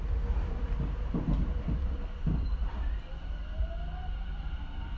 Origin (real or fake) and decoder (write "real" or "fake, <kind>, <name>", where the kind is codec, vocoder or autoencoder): real